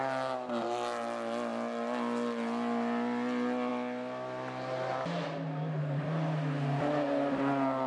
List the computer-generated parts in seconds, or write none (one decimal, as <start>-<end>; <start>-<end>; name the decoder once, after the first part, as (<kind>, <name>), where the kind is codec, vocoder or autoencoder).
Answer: none

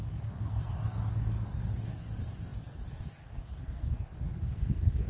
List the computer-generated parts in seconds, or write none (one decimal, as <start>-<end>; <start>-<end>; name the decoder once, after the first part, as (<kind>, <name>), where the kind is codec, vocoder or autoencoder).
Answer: 0.0-5.1 (codec, SNAC)

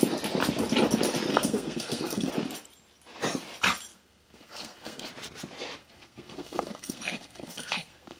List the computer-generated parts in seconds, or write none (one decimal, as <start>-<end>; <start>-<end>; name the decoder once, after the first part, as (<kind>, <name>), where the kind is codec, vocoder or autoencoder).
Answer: 1.3-2.3 (codec, SNAC); 3.9-5.1; 5.8-8.2

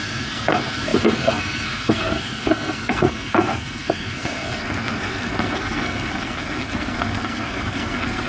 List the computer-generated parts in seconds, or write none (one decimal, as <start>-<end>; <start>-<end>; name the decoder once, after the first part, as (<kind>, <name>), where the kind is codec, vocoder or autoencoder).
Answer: 0.0-8.3 (codec, SNAC)

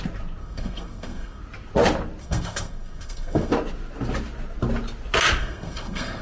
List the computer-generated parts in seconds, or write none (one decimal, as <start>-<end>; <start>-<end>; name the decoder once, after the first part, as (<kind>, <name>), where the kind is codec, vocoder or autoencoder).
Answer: 0.4-1.4 (codec, SNAC); 2.2-3.5; 5.4-6.2

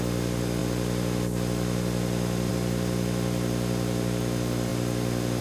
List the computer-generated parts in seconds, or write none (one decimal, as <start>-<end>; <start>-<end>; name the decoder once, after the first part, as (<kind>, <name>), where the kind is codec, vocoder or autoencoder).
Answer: none

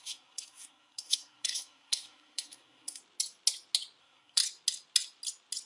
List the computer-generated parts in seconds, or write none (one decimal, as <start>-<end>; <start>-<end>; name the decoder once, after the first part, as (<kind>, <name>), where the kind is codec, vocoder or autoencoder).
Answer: 0.0-3.0 (codec, SNAC); 4.0-4.4

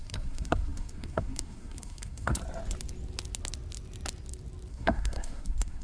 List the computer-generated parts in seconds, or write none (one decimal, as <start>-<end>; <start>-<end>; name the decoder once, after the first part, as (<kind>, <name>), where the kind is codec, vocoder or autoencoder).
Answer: 0.0-2.4 (codec, SNAC); 4.7-5.8